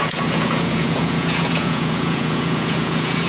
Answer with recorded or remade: remade